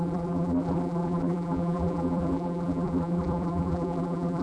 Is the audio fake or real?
fake